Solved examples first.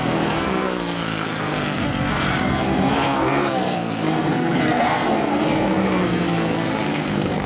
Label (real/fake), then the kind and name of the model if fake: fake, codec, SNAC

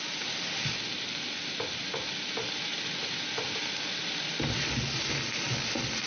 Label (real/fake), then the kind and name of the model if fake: real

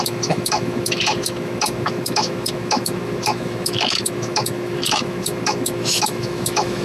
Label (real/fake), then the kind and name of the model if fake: fake, autoencoder, DAC-VAE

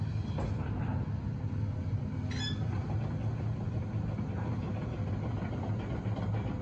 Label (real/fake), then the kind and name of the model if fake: real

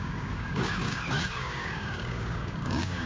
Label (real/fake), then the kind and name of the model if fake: fake, codec, DAC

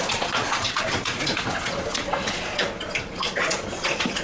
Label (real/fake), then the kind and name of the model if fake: fake, vocoder, Vocos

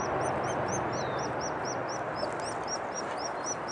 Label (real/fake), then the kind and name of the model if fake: real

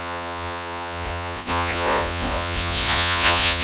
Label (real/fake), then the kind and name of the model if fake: fake, vocoder, Vocos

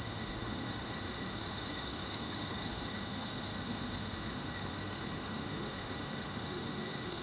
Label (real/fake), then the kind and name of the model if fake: fake, autoencoder, DAC-VAE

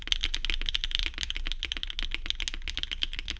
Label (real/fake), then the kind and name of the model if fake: real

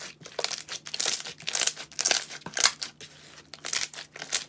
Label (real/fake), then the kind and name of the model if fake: real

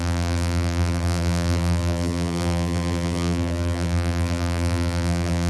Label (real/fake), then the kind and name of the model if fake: fake, vocoder, BigVGAN v2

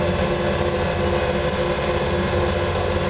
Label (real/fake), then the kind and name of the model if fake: real